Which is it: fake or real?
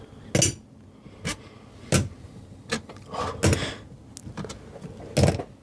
real